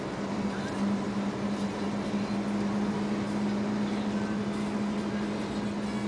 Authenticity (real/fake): real